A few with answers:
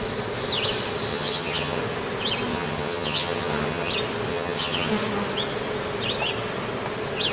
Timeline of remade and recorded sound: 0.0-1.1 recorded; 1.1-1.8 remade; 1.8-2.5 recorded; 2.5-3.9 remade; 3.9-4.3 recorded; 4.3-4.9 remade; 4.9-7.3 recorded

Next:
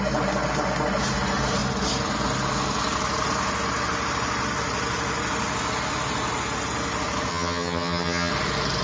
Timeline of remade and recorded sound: 0.0-7.3 recorded; 7.3-8.3 remade; 8.3-8.8 recorded

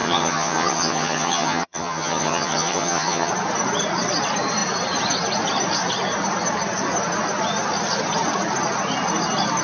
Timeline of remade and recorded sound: 0.0-3.3 remade; 3.3-9.6 recorded

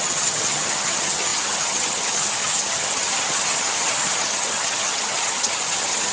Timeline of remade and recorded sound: 0.0-6.1 remade

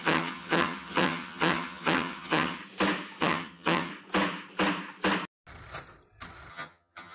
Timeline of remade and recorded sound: 0.0-2.6 remade; 2.6-3.2 recorded; 3.2-3.9 remade; 3.9-6.5 recorded; 6.5-7.1 remade